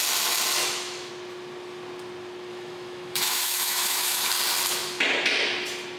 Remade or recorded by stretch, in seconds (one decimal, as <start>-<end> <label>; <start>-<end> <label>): 0.0-0.6 recorded; 0.6-1.1 remade; 1.1-2.5 recorded; 2.5-4.3 remade; 4.3-6.0 recorded